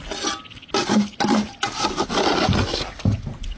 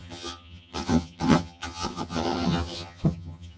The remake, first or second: second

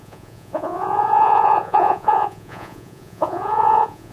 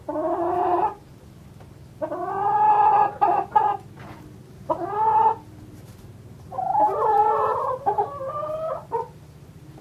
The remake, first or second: first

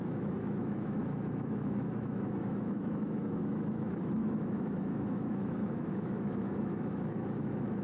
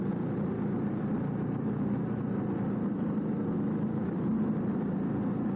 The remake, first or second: first